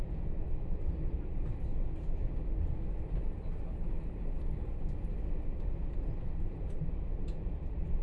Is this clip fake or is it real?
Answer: real